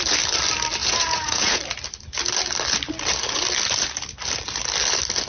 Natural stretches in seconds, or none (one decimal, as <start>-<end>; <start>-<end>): 0.0-0.8; 1.6-5.3